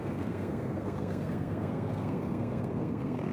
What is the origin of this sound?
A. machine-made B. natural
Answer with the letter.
A